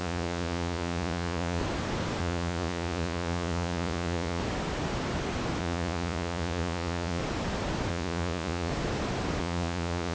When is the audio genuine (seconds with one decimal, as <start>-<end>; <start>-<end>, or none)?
1.6-2.2; 4.4-5.6; 7.2-7.9; 8.7-9.4